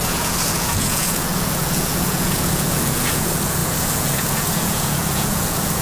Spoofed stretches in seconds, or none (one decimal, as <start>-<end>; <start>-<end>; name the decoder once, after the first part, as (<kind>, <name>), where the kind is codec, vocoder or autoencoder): 0.0-5.8 (vocoder, Vocos)